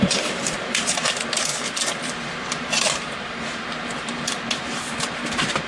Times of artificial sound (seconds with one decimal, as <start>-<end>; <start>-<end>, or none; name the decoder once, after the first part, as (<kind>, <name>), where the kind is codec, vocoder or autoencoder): 0.0-1.5 (vocoder, BigVGAN v2); 2.0-5.7